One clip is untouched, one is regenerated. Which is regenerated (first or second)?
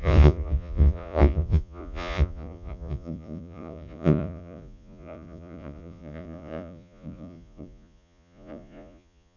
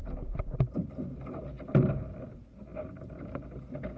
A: first